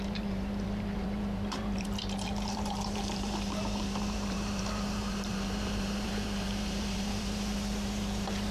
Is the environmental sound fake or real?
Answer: fake